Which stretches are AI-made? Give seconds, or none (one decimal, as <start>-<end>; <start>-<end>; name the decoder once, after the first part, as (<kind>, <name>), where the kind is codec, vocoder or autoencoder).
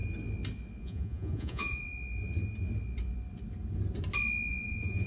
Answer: 0.8-1.9 (vocoder, Vocos); 4.5-5.1